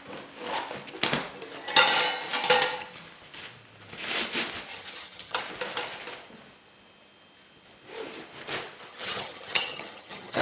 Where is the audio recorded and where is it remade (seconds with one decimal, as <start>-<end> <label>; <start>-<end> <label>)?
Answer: 0.0-4.7 recorded; 4.7-5.4 remade; 5.4-8.9 recorded; 8.9-10.4 remade